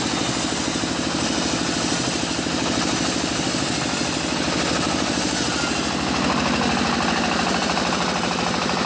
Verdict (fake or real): real